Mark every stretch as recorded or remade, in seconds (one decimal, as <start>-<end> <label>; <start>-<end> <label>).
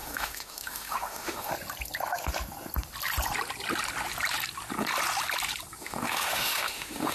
0.0-1.5 remade; 1.5-5.8 recorded; 5.8-7.1 remade